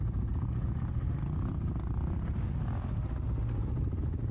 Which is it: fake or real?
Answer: real